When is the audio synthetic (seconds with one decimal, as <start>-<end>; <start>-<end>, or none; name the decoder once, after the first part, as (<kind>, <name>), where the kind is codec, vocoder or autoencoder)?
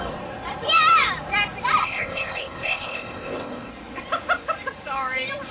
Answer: 1.8-3.7 (codec, ZipCodec)